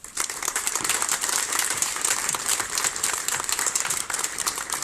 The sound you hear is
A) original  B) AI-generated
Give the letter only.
B